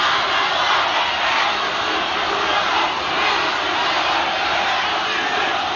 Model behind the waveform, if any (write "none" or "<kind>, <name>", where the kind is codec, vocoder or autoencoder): none